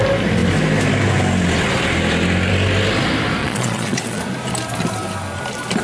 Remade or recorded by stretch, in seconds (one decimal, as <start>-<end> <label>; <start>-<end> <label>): 0.0-3.4 recorded; 3.4-4.2 remade; 4.2-5.8 recorded